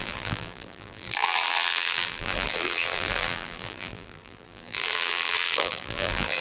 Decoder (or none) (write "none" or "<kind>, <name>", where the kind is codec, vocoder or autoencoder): vocoder, BigVGAN v2